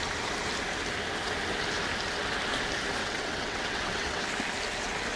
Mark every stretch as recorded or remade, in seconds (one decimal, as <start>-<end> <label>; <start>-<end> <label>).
0.0-3.0 recorded; 3.0-4.2 remade; 4.2-5.2 recorded